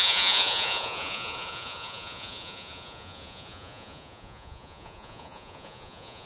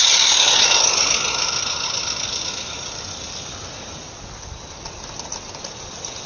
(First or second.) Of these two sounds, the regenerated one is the first